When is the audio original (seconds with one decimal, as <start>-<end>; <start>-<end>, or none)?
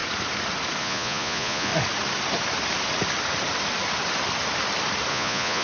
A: 0.0-0.8; 1.7-5.1